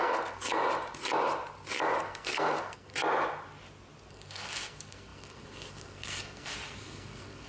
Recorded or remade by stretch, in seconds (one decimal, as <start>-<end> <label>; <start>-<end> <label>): 0.0-0.6 remade; 0.6-2.0 recorded; 2.0-2.9 remade; 2.9-4.1 recorded; 4.1-7.5 remade